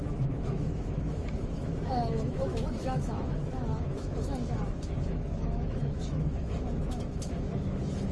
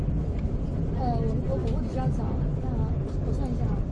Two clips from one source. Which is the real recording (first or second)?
second